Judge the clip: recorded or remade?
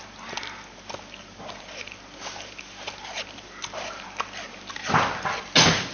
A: recorded